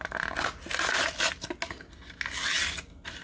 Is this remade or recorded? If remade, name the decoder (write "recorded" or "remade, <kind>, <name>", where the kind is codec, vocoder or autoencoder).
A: recorded